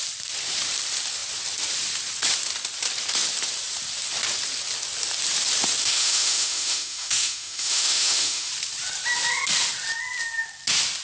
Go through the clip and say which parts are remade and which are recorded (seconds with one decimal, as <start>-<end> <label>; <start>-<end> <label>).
0.0-5.8 recorded; 5.8-8.5 remade; 8.5-11.0 recorded